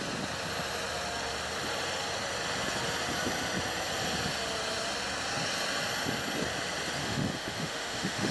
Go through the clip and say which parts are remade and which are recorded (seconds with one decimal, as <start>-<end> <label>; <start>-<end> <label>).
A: 0.0-7.0 recorded; 7.0-8.3 remade